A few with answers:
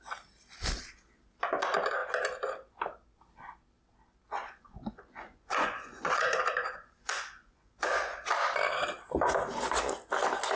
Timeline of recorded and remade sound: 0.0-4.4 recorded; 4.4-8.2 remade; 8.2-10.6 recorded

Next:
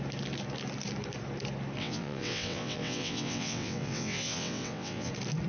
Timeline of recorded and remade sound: 0.0-1.8 recorded; 1.8-5.1 remade; 5.1-5.5 recorded

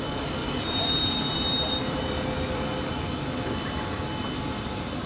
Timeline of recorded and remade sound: 0.0-0.4 recorded; 0.4-3.5 remade; 3.5-5.1 recorded

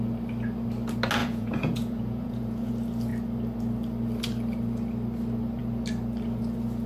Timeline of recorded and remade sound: 0.0-1.2 recorded; 1.2-2.7 remade; 2.7-6.9 recorded